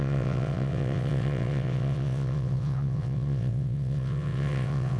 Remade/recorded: remade